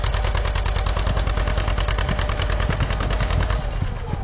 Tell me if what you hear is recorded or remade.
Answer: recorded